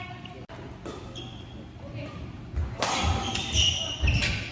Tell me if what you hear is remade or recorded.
recorded